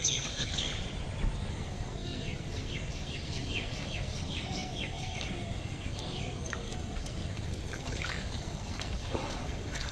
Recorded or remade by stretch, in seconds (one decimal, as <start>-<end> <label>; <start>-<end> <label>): 0.0-0.7 remade; 0.7-1.5 recorded; 1.5-9.9 remade